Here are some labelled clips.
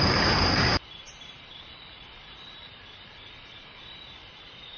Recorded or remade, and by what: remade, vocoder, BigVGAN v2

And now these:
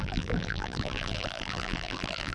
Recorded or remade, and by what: remade, vocoder, BigVGAN v2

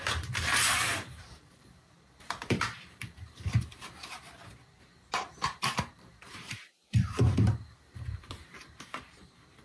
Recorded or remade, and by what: remade, vocoder, BigVGAN v2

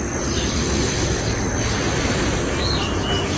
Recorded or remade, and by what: recorded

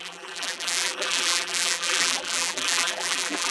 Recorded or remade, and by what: remade, vocoder, BigVGAN v2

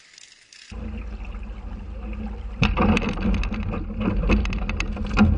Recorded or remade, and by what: recorded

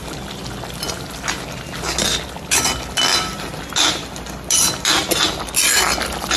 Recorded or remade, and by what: recorded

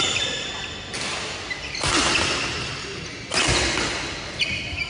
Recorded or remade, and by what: recorded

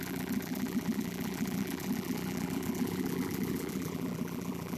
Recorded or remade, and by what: remade, vocoder, BigVGAN v2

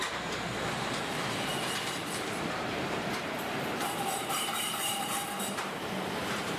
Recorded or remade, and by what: remade, vocoder, BigVGAN v2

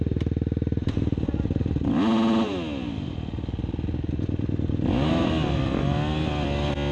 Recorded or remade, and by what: recorded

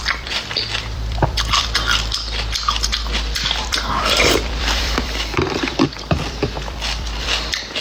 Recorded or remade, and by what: remade, vocoder, BigVGAN v2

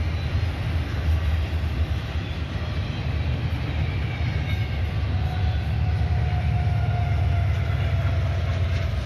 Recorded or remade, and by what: recorded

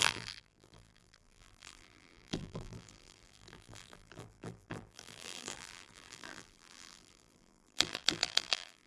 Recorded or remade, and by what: remade, vocoder, BigVGAN v2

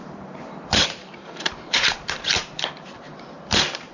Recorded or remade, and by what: remade, vocoder, BigVGAN v2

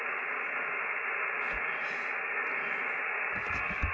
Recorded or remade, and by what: recorded